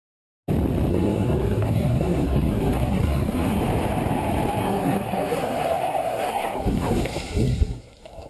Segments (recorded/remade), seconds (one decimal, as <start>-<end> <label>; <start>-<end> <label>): 0.0-0.9 recorded; 0.9-3.6 remade; 3.6-4.6 recorded; 4.6-8.3 remade

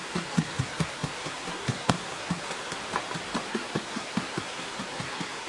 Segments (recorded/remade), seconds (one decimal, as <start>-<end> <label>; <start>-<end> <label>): 0.0-2.8 remade; 2.8-3.5 recorded; 3.5-5.5 remade

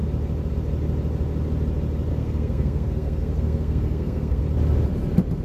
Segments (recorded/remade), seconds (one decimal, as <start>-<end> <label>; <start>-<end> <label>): 0.0-2.1 recorded; 2.1-4.4 remade; 4.4-5.4 recorded

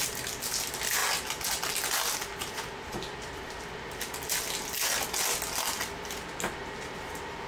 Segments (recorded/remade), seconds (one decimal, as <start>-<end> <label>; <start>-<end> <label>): 0.0-7.5 recorded

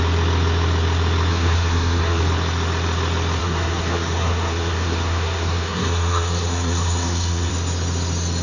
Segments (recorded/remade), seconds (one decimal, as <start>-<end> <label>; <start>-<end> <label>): 0.0-1.3 recorded; 1.3-2.2 remade; 2.2-3.4 recorded; 3.4-7.5 remade; 7.5-8.4 recorded